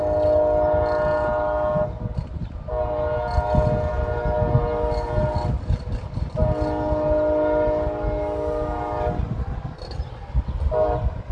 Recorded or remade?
recorded